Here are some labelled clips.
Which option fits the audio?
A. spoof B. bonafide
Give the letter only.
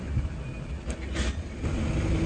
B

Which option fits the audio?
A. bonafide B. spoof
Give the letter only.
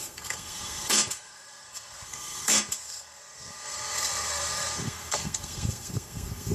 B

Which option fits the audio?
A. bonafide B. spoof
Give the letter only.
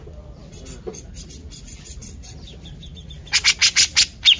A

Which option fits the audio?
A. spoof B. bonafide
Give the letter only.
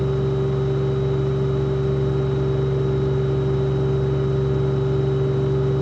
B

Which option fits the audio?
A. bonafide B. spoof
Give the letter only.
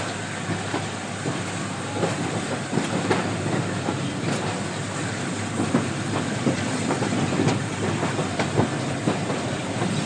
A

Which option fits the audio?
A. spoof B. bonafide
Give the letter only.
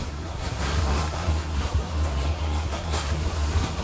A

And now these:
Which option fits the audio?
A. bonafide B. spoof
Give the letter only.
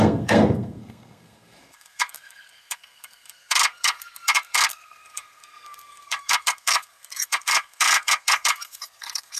B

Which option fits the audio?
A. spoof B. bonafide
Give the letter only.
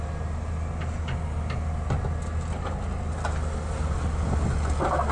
B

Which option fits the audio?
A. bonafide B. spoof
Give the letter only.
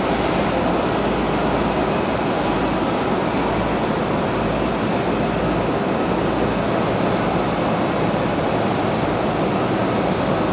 A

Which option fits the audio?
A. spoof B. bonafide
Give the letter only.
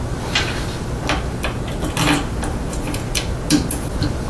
B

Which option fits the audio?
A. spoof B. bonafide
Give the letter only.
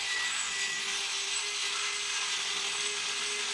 B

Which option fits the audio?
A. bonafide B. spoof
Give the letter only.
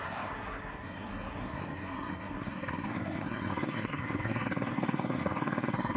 B